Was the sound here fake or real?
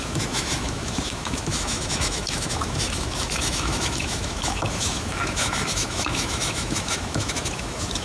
fake